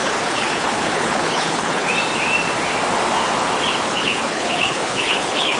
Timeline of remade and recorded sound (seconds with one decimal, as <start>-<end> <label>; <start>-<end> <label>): 0.0-1.9 remade; 1.9-3.9 recorded; 3.9-5.6 remade